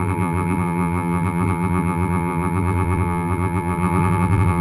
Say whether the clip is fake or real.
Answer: fake